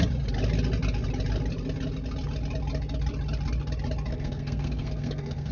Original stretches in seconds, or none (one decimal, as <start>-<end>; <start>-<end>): 0.0-4.1